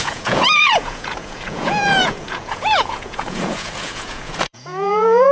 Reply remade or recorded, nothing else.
remade